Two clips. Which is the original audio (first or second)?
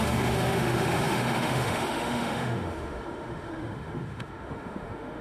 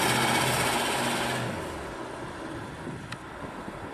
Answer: second